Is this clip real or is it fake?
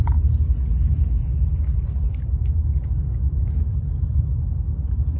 real